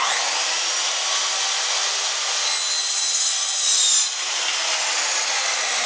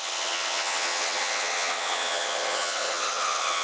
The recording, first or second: first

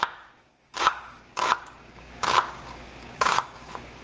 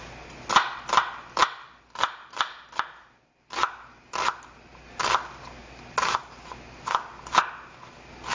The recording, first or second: second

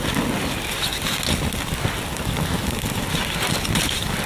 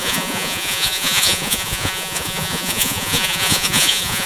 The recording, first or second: first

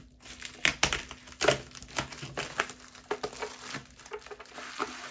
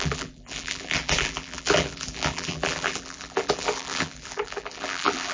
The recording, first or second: first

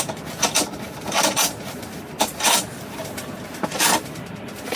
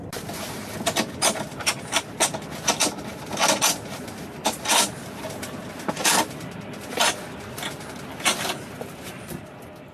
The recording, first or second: second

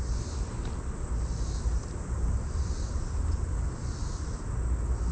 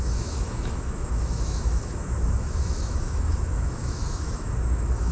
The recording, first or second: first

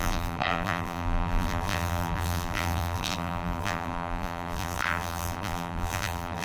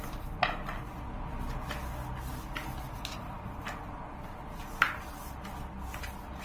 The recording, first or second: second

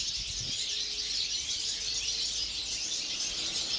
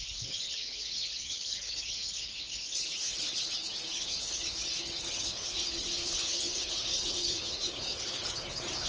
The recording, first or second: first